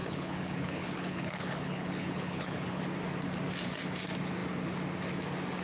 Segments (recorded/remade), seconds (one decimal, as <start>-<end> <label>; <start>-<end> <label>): 0.0-2.8 remade; 2.8-5.6 recorded